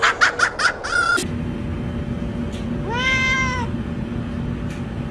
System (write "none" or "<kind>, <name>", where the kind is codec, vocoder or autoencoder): none